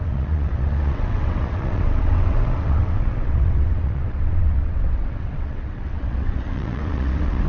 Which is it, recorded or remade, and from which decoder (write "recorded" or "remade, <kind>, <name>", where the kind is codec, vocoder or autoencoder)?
remade, vocoder, WaveNeXt